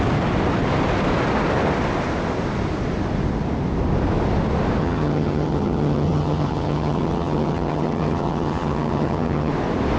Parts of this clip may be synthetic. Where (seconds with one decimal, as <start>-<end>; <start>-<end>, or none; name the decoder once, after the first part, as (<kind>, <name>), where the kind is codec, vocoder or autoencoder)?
4.8-9.5 (vocoder, HiFi-GAN)